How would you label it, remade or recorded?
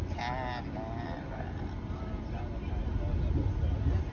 recorded